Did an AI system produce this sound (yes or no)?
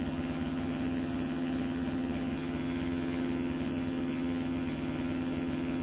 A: yes